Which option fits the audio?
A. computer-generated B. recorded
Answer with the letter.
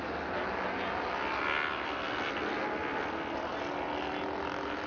B